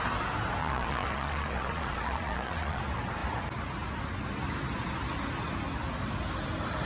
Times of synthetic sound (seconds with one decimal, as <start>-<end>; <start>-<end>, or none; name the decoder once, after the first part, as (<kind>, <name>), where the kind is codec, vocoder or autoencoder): 0.6-2.8 (vocoder, Vocos)